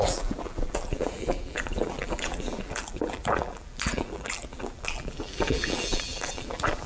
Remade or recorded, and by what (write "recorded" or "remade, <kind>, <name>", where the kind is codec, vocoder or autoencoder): remade, vocoder, BigVGAN v2